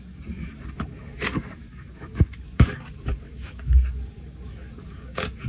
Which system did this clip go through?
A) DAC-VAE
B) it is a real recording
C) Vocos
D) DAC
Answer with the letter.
D